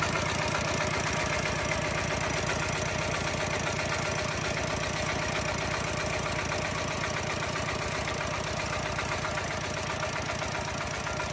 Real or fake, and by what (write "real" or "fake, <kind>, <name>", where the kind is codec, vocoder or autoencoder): real